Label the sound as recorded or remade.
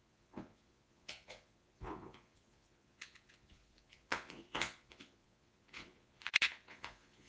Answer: remade